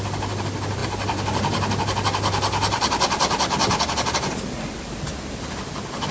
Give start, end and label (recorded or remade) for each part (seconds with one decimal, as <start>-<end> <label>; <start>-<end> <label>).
0.0-6.1 recorded